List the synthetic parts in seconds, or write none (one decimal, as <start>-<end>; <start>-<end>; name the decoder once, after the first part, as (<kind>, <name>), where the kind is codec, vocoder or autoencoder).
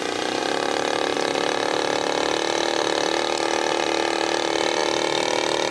none